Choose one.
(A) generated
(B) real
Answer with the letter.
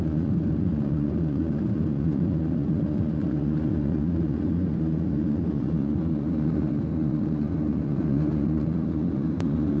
A